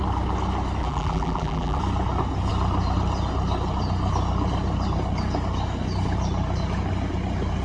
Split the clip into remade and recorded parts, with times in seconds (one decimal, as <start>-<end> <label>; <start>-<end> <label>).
0.0-0.8 recorded; 0.8-1.8 remade; 1.8-7.6 recorded